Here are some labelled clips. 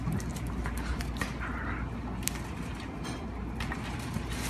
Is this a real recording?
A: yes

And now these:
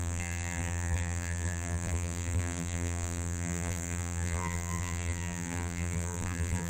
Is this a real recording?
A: no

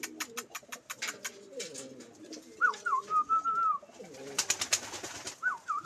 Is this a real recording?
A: yes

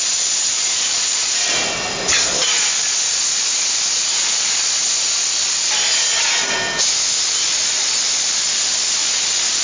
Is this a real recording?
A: yes